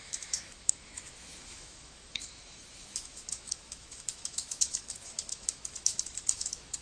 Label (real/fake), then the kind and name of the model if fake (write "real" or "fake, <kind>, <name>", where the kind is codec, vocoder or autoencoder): fake, autoencoder, DAC-VAE